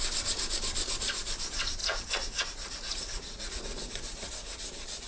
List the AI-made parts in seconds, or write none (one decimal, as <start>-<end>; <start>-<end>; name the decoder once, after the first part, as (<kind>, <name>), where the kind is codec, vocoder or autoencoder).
1.8-5.1 (vocoder, Vocos)